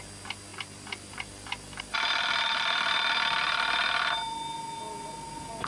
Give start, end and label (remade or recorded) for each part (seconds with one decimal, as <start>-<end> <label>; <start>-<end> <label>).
0.0-0.5 recorded; 0.5-2.9 remade; 2.9-5.7 recorded